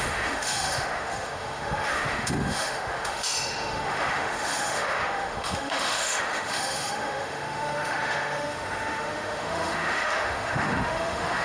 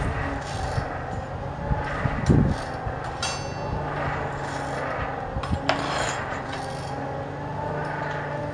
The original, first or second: second